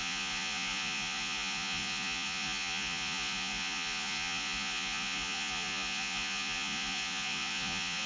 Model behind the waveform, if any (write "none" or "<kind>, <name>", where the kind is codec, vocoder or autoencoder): vocoder, Vocos